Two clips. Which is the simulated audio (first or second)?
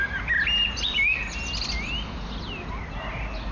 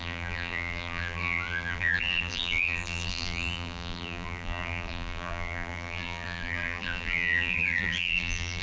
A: second